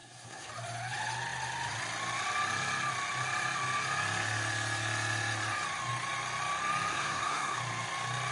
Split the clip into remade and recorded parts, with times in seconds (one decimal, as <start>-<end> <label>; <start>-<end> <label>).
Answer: 0.0-0.5 remade; 0.5-6.9 recorded; 6.9-7.6 remade; 7.6-8.3 recorded